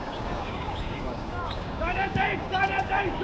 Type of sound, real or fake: fake